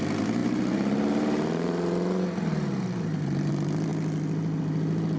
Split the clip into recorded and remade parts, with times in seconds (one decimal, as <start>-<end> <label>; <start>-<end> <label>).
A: 0.0-0.4 recorded; 0.4-3.5 remade; 3.5-5.2 recorded